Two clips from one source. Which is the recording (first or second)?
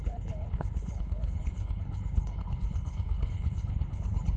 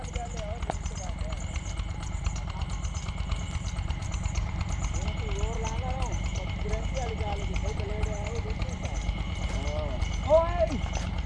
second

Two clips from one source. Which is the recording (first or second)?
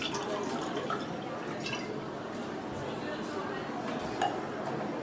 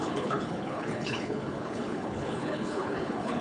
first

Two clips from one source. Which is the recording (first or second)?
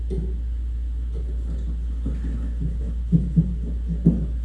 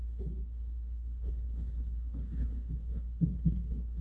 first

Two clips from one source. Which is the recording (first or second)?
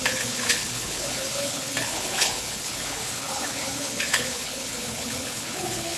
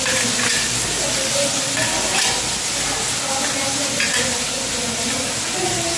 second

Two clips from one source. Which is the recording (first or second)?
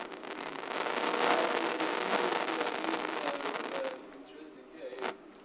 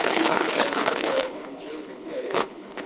first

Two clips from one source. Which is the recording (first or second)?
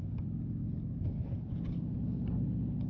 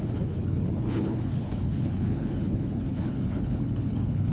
first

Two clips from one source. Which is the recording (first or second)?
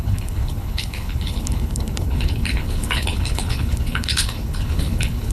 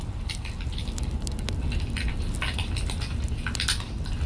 second